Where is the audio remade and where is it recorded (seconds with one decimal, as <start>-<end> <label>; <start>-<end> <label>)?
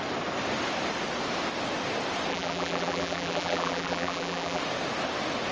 0.0-2.3 recorded; 2.3-4.6 remade; 4.6-5.5 recorded